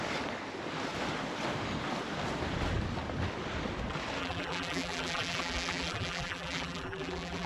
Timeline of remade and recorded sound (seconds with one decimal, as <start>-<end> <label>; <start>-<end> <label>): 0.0-4.2 recorded; 4.2-7.5 remade